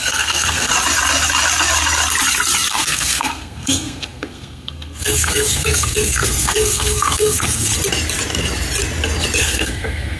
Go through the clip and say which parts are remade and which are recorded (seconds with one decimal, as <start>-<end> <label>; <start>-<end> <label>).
0.0-0.7 remade; 0.7-2.7 recorded; 2.7-7.7 remade; 7.7-9.4 recorded; 9.4-10.2 remade